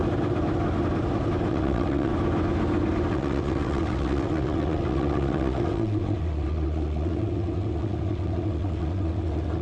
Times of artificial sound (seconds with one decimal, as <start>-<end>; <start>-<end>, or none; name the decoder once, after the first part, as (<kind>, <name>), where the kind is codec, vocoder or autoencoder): 1.5-2.1 (vocoder, WaveNeXt); 3.1-9.6